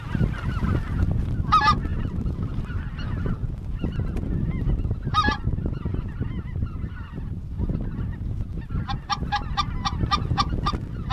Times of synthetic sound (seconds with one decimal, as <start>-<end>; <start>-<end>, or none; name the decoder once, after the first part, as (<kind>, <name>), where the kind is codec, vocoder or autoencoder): 1.9-3.5 (vocoder, BigVGAN v2)